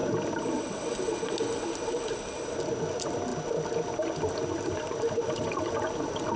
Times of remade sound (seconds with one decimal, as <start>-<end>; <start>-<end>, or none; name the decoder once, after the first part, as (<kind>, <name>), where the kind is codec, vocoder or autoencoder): none